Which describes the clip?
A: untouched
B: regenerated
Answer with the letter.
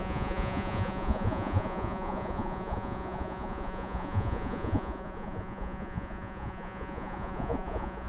B